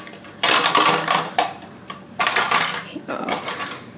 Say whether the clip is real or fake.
real